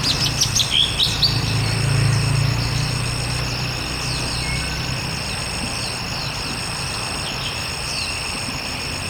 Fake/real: real